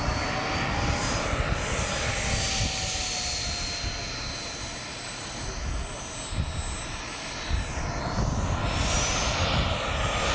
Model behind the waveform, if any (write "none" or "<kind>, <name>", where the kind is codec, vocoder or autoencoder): none